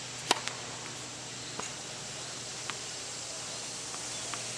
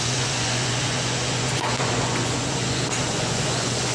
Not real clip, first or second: second